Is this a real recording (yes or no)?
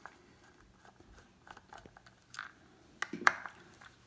yes